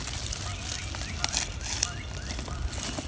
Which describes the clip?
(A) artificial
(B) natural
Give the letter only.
B